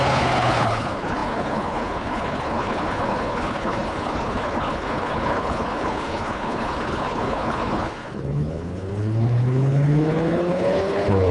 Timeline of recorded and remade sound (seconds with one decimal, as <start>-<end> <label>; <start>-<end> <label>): 0.0-11.3 remade